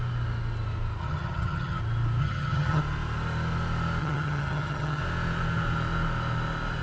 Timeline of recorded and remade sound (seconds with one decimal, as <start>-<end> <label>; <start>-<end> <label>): 0.0-1.0 recorded; 1.0-1.8 remade; 1.8-2.2 recorded; 2.2-2.8 remade; 2.8-4.0 recorded; 4.0-5.0 remade; 5.0-6.8 recorded